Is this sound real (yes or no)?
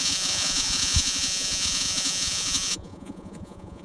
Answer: no